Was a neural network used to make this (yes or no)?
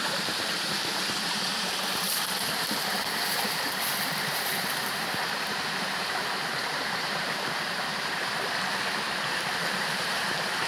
yes